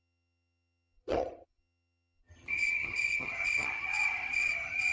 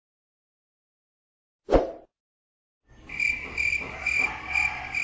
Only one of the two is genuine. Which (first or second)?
second